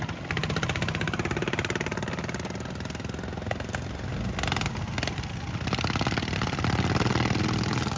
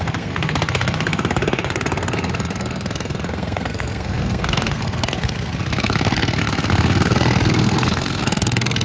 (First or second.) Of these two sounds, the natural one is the first